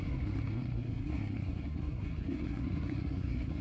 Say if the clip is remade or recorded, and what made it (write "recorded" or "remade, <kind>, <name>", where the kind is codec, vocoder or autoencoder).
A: remade, codec, SNAC